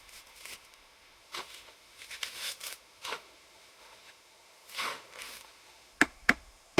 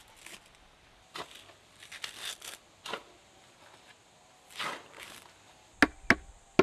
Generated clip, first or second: first